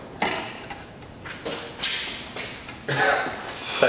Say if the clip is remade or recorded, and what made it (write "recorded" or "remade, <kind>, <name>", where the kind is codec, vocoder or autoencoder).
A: recorded